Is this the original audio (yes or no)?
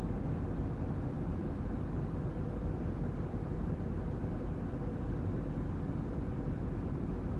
yes